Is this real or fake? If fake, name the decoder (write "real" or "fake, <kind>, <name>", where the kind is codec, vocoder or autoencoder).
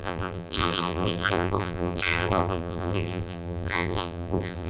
fake, vocoder, BigVGAN v2